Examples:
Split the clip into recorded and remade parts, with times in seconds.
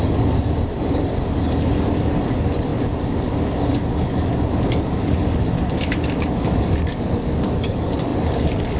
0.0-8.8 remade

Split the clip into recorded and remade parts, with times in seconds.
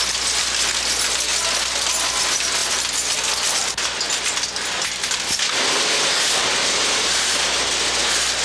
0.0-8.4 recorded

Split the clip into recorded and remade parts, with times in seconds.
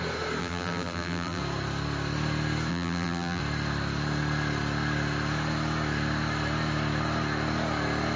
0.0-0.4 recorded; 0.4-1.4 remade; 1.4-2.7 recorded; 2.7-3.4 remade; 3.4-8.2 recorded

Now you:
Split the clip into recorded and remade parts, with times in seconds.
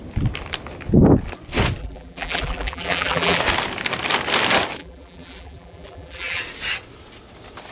0.0-1.8 recorded; 1.8-3.4 remade; 3.4-4.8 recorded; 4.8-6.4 remade; 6.4-7.7 recorded